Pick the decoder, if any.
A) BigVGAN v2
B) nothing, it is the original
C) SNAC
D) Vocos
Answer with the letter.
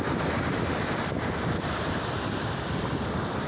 B